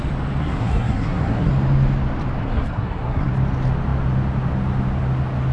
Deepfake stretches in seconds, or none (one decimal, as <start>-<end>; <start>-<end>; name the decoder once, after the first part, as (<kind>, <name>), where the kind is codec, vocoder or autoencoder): 0.4-1.5 (codec, SNAC); 2.4-3.3